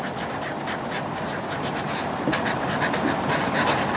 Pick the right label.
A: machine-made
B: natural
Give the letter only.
B